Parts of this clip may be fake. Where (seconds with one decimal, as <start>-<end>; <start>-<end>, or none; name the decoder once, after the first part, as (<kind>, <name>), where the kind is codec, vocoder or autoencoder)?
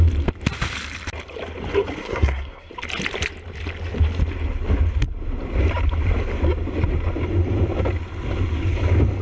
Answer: 2.0-2.7 (codec, SNAC)